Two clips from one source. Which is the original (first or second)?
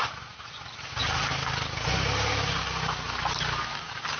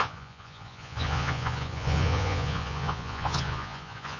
first